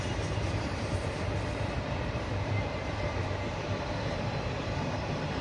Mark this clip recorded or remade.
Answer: remade